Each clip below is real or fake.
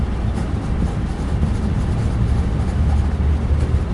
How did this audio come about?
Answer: real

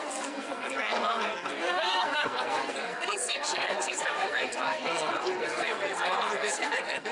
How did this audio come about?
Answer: fake